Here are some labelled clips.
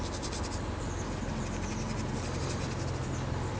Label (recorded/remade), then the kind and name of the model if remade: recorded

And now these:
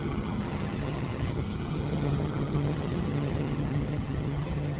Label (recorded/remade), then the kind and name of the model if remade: remade, vocoder, HiFi-GAN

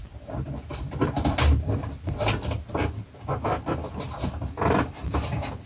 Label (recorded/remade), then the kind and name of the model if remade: recorded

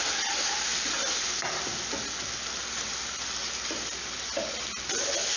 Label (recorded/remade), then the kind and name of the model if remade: recorded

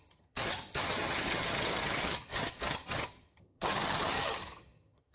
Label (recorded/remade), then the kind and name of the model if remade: remade, vocoder, HiFi-GAN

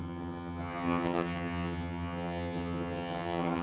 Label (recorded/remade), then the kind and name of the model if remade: remade, vocoder, HiFi-GAN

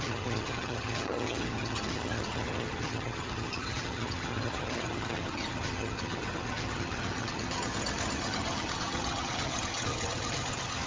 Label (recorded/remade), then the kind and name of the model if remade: remade, vocoder, HiFi-GAN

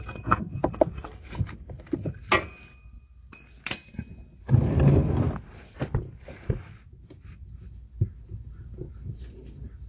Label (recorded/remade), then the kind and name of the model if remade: recorded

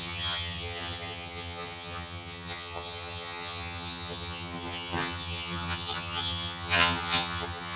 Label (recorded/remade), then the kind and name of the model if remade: remade, vocoder, HiFi-GAN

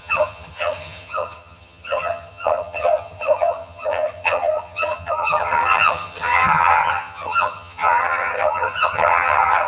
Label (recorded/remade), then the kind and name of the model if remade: remade, vocoder, HiFi-GAN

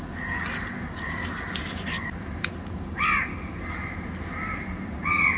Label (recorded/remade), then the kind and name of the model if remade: recorded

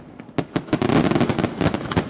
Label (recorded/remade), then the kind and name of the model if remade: recorded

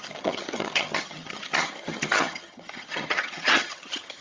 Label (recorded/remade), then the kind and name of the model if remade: remade, vocoder, HiFi-GAN